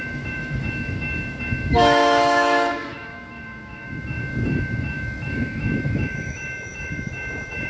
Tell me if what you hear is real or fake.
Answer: fake